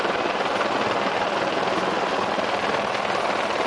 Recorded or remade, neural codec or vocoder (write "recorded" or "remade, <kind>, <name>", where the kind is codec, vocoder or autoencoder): recorded